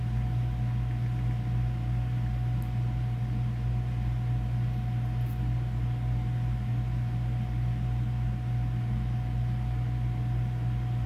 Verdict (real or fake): real